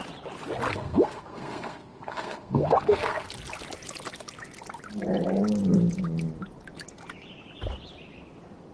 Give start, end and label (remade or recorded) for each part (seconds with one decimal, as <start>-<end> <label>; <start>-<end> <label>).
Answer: 0.0-0.7 recorded; 0.7-3.3 remade; 3.3-8.7 recorded